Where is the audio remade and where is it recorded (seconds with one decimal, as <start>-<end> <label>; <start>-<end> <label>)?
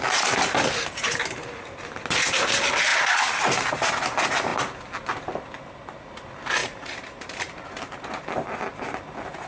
0.0-6.6 recorded; 6.6-8.1 remade; 8.1-9.5 recorded